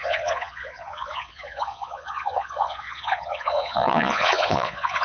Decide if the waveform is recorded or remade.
remade